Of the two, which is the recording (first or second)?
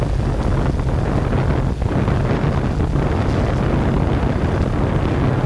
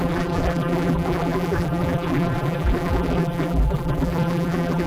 first